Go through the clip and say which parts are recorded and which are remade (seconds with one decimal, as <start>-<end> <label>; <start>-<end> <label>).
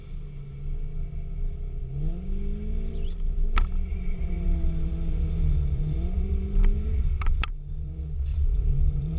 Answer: 0.0-3.9 recorded; 3.9-7.9 remade; 7.9-8.3 recorded; 8.3-9.2 remade